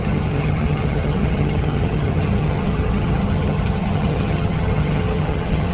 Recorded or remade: remade